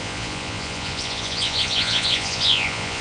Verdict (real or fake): fake